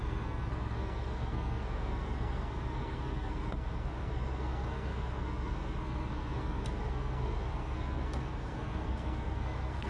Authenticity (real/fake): fake